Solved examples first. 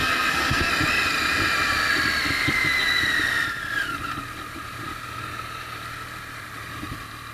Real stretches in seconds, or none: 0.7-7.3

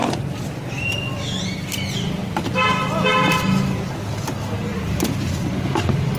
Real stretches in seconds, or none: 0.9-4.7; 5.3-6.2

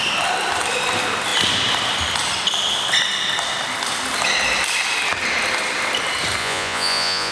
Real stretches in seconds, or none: 0.0-6.4

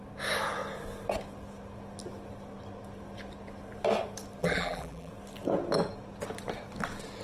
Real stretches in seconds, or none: 0.0-4.4; 5.1-7.2

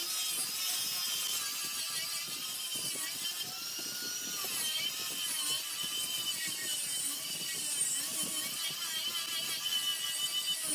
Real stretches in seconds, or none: 0.0-6.4; 7.6-10.7

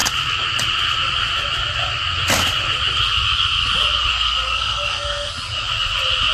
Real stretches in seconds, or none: 0.0-4.1; 5.3-6.3

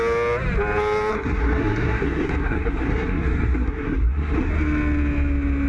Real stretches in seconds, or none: 0.0-1.1; 4.5-5.7